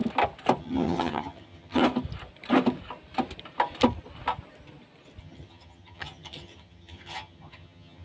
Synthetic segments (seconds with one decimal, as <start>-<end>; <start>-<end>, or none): 0.6-1.8; 5.2-8.0